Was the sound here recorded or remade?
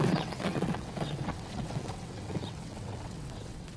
remade